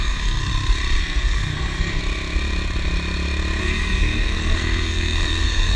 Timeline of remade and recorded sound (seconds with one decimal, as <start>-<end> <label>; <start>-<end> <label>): 0.0-0.5 remade; 0.5-1.0 recorded; 1.0-2.0 remade; 2.0-3.6 recorded; 3.6-5.8 remade